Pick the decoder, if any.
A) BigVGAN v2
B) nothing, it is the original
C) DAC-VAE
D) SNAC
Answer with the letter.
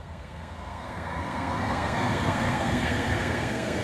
D